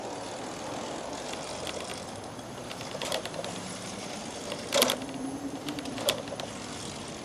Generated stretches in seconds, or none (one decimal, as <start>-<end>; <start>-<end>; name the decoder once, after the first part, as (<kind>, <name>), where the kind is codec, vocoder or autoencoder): 1.9-6.2 (vocoder, BigVGAN v2)